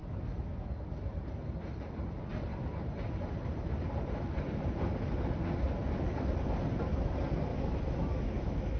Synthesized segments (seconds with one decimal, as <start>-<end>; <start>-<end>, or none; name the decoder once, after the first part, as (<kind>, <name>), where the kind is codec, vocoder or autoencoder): 0.0-0.7 (autoencoder, DAC-VAE); 7.5-8.8